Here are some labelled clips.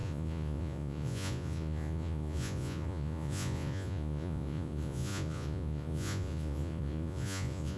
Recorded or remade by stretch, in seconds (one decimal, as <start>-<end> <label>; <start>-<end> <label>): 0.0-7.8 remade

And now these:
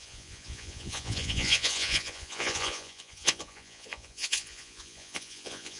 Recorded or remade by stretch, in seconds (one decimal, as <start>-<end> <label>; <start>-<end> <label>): 0.0-5.8 remade

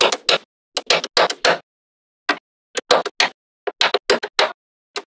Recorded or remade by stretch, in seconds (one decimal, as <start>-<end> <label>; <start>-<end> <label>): 0.0-5.1 recorded

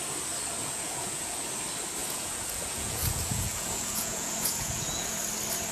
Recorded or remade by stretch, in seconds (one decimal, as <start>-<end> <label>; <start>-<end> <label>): 0.0-0.6 recorded; 0.6-1.4 remade; 1.4-2.0 recorded; 2.0-5.2 remade; 5.2-5.7 recorded

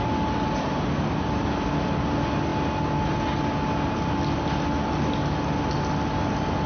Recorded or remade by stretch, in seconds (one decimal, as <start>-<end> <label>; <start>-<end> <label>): 0.0-6.7 recorded

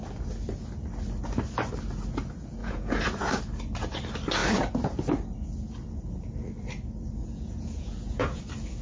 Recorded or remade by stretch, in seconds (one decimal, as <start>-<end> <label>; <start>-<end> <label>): 0.0-2.6 recorded; 2.6-3.4 remade; 3.4-7.2 recorded; 7.2-8.4 remade; 8.4-8.8 recorded

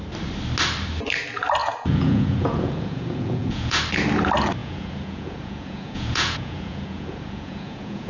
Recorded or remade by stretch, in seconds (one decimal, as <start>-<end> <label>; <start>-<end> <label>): 0.0-1.6 recorded; 1.6-3.8 remade; 3.8-4.6 recorded; 4.6-8.1 remade